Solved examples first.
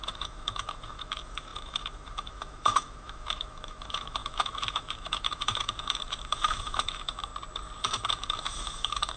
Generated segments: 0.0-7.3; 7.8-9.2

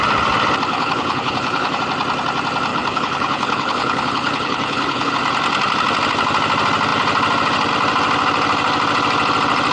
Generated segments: 0.7-1.8; 2.7-5.1

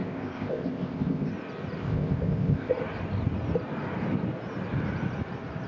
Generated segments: 0.0-1.3; 1.8-2.7

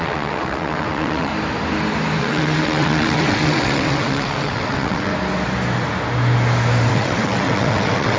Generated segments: 0.0-1.3; 2.2-5.1; 6.9-8.2

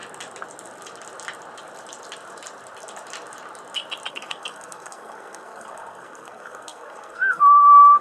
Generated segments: 4.1-8.0

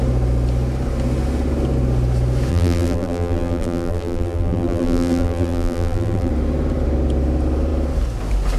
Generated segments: 2.5-6.3